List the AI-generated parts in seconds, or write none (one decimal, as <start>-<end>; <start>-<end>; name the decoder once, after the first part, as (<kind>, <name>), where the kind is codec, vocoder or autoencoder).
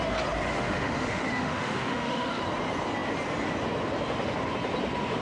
0.5-2.4 (autoencoder, DAC-VAE)